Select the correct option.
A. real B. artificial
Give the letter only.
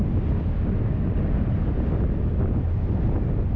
A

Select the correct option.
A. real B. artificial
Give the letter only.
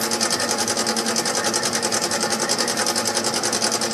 A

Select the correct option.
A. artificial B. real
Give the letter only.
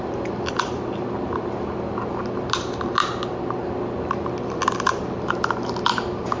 B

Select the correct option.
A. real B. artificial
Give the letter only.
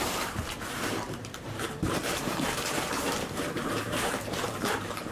B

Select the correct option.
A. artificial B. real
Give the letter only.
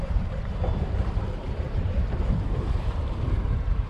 A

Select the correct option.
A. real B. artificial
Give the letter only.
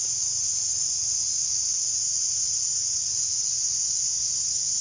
A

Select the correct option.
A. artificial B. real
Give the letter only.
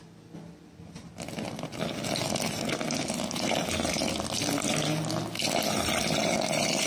B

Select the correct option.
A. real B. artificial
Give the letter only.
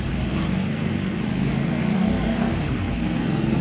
B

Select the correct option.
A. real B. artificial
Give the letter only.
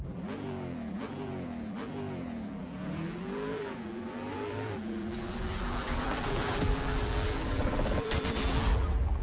B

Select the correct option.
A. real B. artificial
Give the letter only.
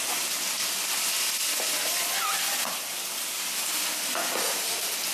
A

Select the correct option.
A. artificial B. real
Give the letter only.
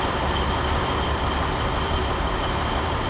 A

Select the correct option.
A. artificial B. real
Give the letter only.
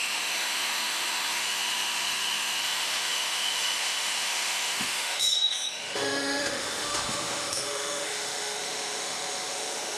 A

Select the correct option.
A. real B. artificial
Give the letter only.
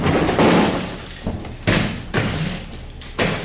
A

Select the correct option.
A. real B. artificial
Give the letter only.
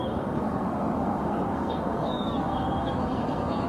B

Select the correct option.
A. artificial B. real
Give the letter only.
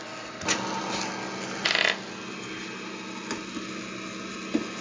B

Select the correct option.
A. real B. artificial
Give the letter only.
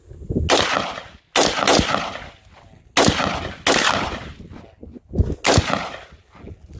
A